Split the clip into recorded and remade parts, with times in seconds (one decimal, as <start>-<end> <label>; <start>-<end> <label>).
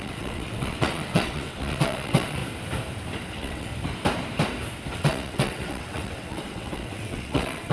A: 0.0-2.4 remade; 2.4-3.3 recorded; 3.3-3.7 remade; 3.7-4.9 recorded; 4.9-7.7 remade